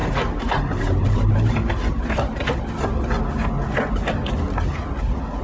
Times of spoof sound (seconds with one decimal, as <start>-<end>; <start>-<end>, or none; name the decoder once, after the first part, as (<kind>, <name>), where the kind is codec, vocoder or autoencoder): 0.0-3.2 (vocoder, BigVGAN v2)